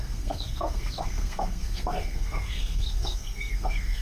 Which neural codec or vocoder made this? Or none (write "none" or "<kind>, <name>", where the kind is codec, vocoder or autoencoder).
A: codec, SNAC